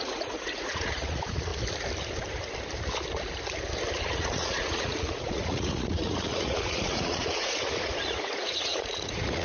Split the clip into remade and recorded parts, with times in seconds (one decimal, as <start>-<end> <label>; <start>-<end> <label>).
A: 0.0-1.5 remade; 1.5-4.1 recorded; 4.1-9.4 remade